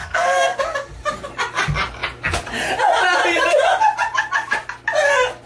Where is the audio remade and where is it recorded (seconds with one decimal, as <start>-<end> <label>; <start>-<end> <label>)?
0.0-0.6 remade; 0.6-5.5 recorded